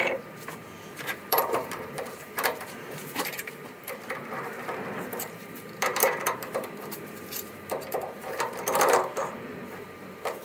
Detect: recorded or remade remade